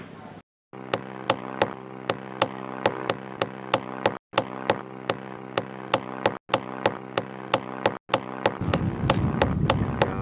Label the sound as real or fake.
real